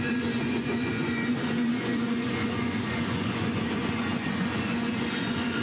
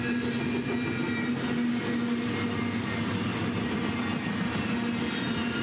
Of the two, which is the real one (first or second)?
second